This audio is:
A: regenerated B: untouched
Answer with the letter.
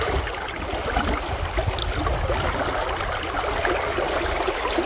B